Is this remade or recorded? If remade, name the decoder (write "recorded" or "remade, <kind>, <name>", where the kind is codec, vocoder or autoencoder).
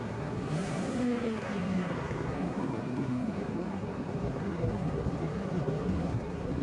remade, codec, SNAC